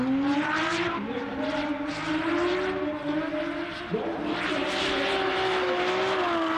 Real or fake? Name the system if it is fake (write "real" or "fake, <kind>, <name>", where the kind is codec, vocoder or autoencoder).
real